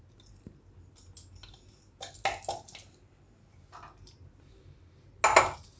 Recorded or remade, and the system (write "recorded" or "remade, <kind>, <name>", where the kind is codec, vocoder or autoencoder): recorded